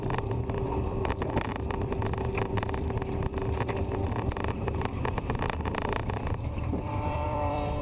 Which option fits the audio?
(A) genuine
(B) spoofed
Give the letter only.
B